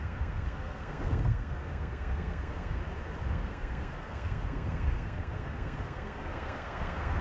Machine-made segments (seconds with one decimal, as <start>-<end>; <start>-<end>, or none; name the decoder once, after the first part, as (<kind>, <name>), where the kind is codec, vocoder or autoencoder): 0.0-2.8 (codec, SNAC); 3.3-7.2